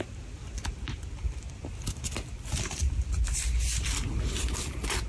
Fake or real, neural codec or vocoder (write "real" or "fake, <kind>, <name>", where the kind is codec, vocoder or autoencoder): real